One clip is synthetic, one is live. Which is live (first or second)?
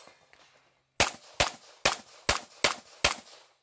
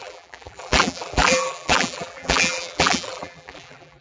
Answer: first